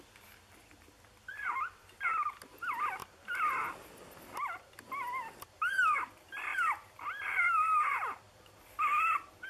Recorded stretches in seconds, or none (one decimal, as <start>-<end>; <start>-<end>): 0.0-3.0; 3.8-6.5